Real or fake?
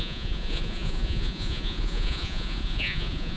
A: fake